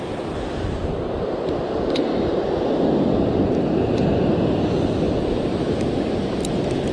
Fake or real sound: real